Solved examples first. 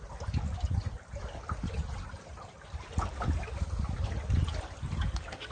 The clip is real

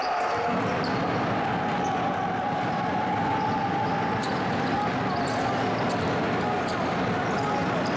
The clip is real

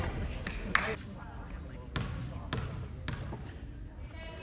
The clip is real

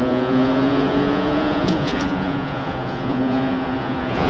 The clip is fake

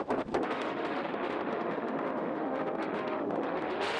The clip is fake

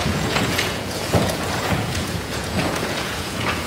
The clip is fake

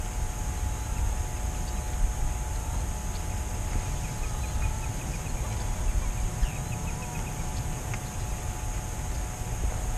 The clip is real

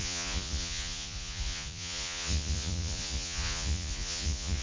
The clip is fake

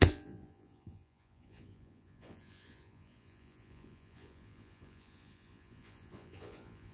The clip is fake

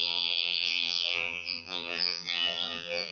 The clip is fake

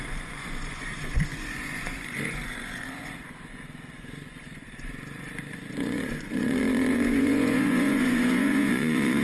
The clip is fake